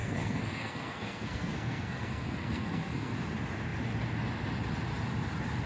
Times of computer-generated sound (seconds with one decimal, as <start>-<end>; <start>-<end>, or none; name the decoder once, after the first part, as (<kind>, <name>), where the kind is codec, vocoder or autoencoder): 0.0-3.1 (codec, SNAC)